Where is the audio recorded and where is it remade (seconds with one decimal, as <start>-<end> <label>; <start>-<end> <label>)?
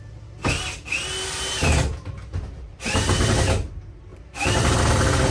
0.0-5.3 recorded